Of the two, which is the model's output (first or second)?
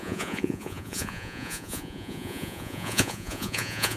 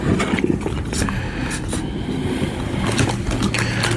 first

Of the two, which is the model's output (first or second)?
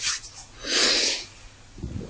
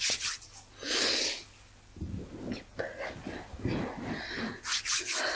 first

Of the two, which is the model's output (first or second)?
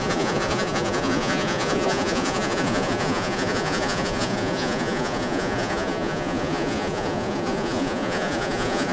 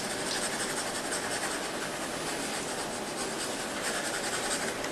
first